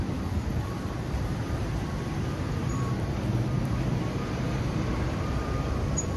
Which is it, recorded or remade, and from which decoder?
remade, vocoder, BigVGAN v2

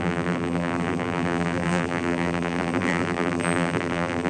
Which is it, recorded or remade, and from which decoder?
remade, vocoder, BigVGAN v2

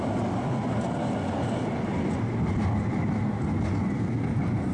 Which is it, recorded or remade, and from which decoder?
recorded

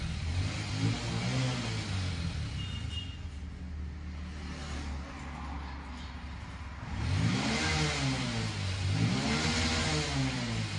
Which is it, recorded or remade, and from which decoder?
recorded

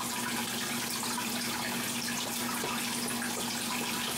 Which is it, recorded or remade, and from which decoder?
recorded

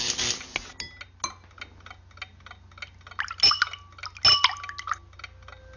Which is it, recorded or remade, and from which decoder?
recorded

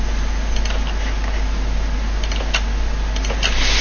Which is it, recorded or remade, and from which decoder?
recorded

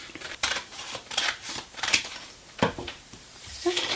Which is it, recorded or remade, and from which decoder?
remade, vocoder, BigVGAN v2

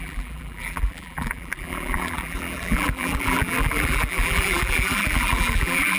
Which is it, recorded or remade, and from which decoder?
remade, vocoder, BigVGAN v2